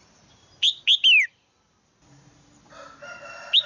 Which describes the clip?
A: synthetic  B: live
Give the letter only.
B